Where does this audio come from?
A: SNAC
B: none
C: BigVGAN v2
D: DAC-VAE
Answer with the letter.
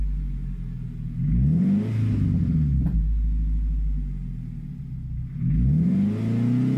B